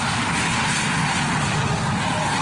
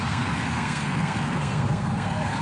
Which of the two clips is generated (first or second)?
second